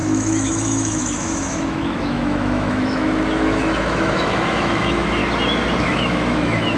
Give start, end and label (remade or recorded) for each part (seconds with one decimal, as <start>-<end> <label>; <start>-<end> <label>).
0.0-5.2 remade; 5.2-5.8 recorded; 5.8-6.8 remade